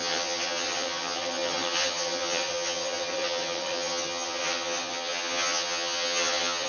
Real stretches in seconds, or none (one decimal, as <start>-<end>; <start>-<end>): none